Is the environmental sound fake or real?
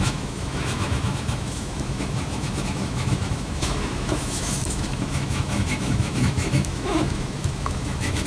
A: fake